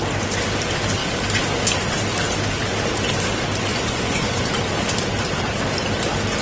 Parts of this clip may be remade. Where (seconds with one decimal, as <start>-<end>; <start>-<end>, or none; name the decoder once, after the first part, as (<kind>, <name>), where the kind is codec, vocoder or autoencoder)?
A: 3.7-4.5 (vocoder, Vocos)